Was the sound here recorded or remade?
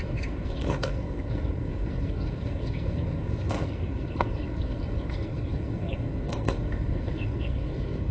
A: remade